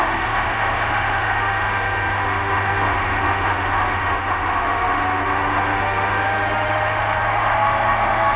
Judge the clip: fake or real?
fake